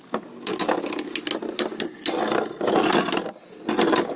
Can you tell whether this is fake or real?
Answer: real